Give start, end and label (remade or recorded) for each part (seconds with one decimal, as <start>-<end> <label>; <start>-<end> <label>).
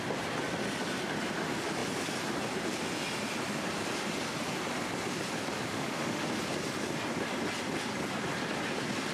0.0-5.7 recorded; 5.7-6.2 remade; 6.2-9.1 recorded